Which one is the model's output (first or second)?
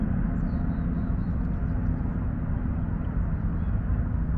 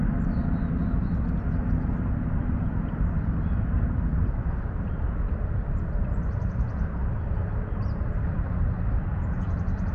second